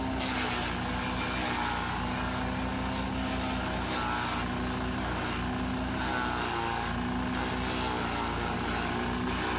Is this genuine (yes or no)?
yes